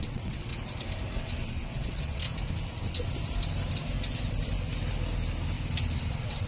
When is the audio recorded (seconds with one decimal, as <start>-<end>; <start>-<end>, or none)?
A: 0.5-1.2; 2.2-6.1